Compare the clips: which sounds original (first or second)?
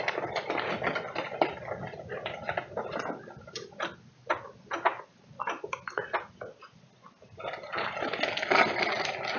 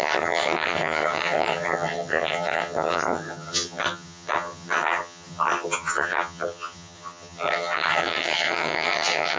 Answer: first